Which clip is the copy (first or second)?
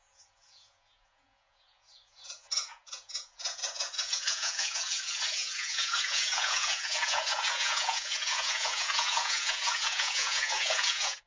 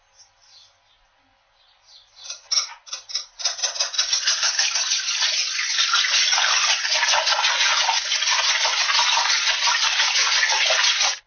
first